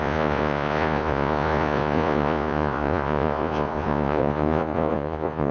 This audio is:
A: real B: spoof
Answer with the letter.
B